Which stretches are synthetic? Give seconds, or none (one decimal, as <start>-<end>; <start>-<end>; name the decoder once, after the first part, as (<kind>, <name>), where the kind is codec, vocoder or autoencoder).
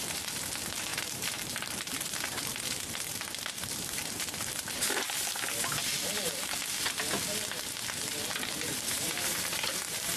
0.9-5.1 (vocoder, BigVGAN v2)